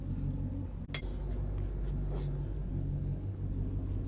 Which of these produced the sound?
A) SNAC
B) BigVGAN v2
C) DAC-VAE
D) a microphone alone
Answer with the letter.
D